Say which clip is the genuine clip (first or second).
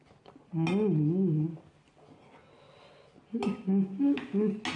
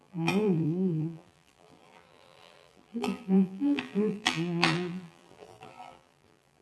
first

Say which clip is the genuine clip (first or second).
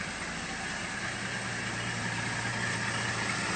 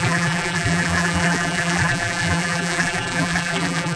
first